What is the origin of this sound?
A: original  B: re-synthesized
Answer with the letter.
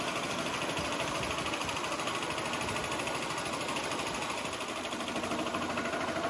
A